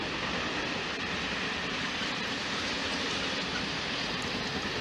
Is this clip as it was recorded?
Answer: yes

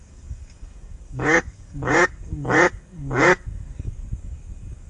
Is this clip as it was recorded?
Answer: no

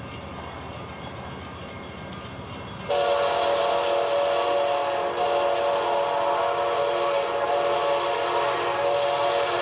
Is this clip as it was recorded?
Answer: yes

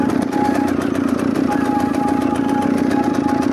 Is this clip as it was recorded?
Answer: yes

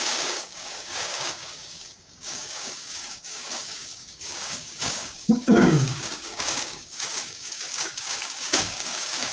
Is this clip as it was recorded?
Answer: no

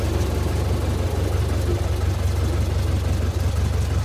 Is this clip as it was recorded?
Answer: yes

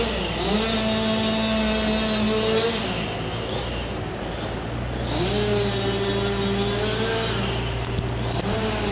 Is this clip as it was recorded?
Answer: yes